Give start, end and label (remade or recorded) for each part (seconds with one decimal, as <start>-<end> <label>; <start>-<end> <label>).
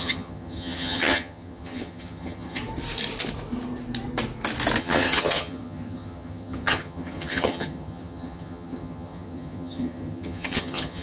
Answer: 0.0-2.6 remade; 2.6-4.8 recorded; 4.8-11.0 remade